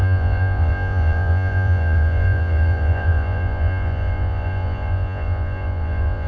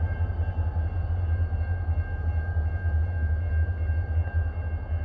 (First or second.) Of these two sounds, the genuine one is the second